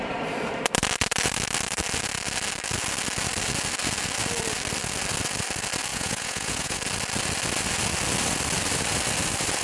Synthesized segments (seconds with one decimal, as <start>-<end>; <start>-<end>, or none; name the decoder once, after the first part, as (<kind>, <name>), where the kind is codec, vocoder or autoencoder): 5.9-6.8 (vocoder, Vocos)